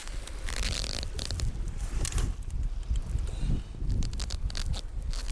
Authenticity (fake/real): real